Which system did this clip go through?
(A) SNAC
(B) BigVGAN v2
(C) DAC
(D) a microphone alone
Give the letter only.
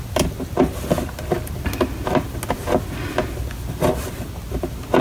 D